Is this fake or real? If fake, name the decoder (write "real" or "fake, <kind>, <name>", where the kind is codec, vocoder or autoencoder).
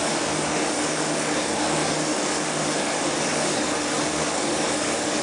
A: fake, codec, DAC